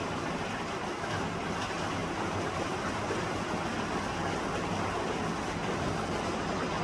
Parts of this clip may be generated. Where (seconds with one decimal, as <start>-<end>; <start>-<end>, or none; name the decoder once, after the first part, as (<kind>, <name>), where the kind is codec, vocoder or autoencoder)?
2.0-2.7 (vocoder, BigVGAN v2)